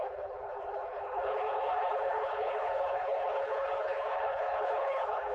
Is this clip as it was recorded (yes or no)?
no